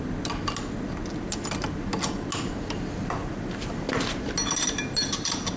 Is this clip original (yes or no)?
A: yes